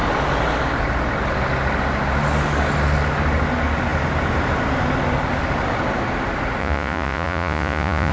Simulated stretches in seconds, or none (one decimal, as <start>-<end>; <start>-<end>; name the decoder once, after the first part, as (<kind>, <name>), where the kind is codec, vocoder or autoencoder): 6.6-8.1 (vocoder, Vocos)